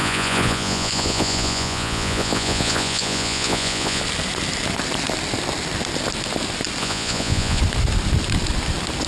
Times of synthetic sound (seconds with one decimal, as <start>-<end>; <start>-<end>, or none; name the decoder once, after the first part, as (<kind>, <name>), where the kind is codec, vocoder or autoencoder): 0.0-4.0 (vocoder, Vocos); 6.8-7.6